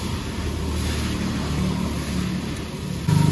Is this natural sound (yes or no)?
yes